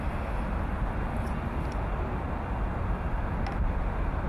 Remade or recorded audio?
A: recorded